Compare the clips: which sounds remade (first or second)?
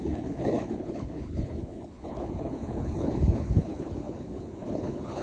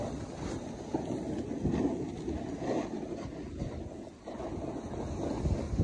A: first